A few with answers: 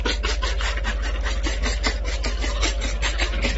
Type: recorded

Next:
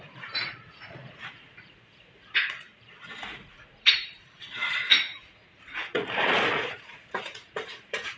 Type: remade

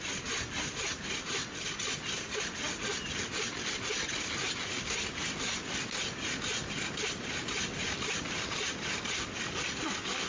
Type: recorded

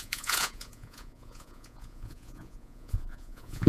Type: remade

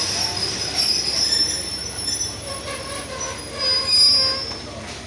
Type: recorded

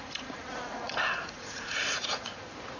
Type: remade